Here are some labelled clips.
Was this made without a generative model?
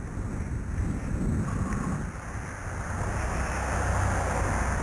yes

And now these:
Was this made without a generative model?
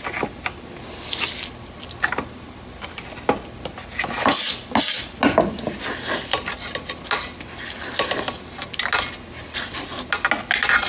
yes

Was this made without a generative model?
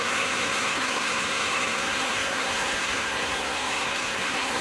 no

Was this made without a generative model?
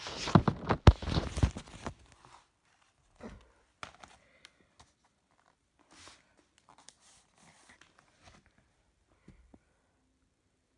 yes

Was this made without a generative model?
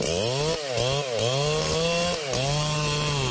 yes